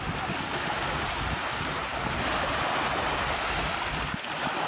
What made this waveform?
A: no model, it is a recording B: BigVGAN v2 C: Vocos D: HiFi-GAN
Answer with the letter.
A